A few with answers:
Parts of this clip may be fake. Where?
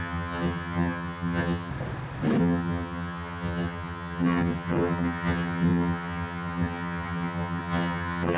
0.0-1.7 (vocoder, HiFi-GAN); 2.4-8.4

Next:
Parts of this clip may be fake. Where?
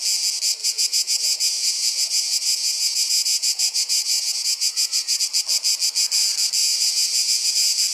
0.6-5.2 (vocoder, Vocos); 6.6-7.5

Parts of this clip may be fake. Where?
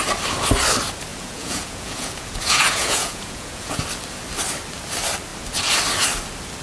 1.1-3.8 (vocoder, Vocos)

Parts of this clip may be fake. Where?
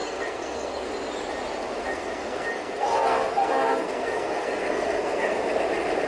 0.0-0.9 (codec, SNAC); 1.8-5.5